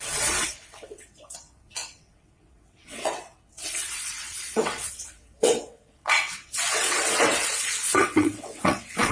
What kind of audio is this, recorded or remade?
remade